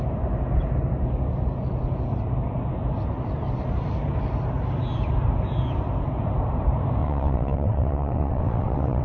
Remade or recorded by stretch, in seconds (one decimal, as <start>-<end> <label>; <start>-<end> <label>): 0.0-7.0 recorded; 7.0-9.0 remade